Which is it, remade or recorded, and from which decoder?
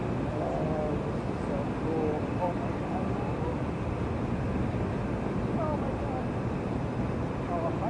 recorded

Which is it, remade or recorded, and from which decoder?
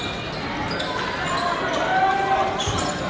recorded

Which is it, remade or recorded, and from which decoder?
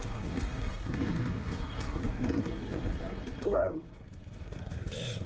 remade, codec, SNAC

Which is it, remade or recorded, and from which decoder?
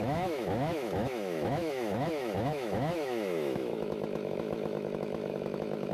remade, autoencoder, DAC-VAE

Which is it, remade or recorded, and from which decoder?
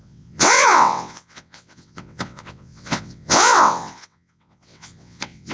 remade, vocoder, WaveNeXt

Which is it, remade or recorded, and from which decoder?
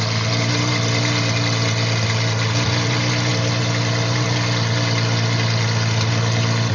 recorded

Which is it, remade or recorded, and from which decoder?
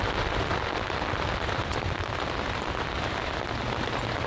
recorded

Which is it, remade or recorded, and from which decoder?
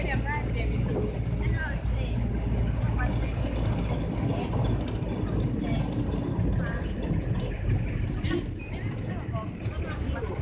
recorded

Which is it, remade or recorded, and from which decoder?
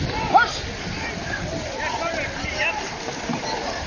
recorded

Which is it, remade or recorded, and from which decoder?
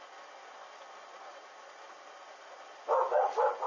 recorded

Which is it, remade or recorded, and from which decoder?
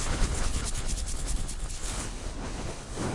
remade, codec, HILCodec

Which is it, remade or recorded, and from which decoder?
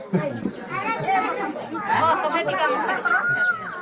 recorded